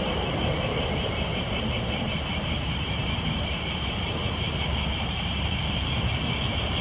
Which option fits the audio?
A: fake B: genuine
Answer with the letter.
A